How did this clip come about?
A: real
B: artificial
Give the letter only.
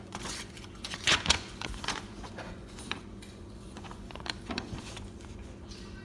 B